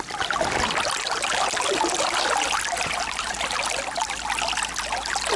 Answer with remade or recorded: recorded